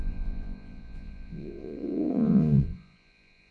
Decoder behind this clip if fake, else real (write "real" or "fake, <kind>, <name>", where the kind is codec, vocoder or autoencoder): fake, vocoder, Vocos